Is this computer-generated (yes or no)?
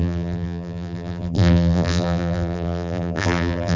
yes